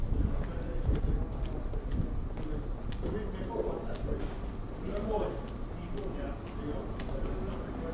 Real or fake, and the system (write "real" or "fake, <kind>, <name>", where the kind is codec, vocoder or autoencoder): real